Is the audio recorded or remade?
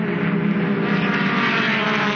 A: recorded